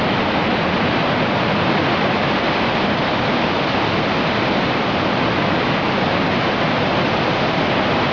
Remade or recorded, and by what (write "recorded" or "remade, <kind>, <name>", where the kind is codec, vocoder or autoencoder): recorded